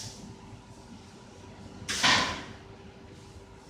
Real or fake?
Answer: real